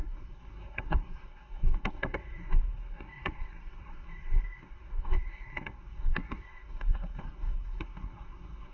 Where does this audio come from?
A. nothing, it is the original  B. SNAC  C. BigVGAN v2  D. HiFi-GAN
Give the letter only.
B